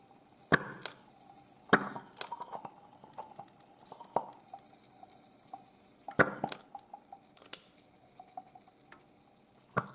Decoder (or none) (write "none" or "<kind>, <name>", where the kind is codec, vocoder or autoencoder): none